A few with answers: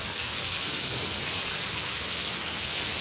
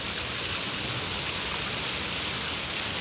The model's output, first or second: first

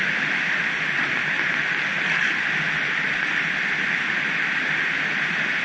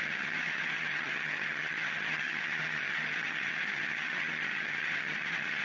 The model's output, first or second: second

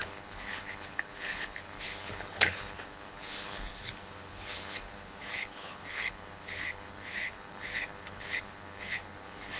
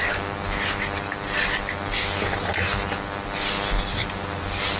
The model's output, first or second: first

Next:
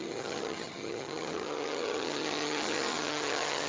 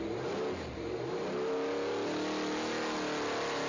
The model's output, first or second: first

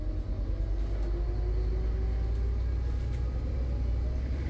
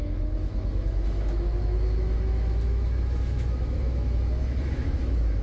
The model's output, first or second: second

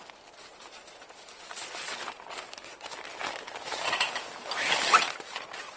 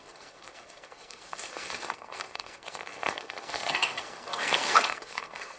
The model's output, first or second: second